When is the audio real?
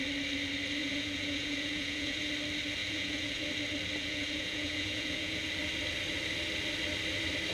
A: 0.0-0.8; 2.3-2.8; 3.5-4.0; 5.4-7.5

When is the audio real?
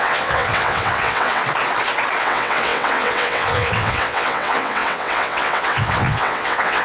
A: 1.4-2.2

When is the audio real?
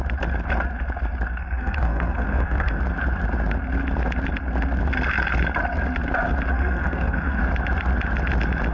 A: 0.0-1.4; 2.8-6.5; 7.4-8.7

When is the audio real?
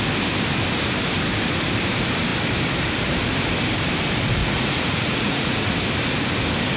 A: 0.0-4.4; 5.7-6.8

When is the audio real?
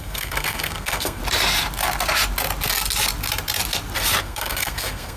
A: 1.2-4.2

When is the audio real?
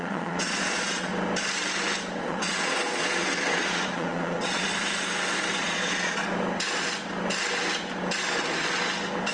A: 1.1-2.2; 4.7-5.5; 6.2-9.3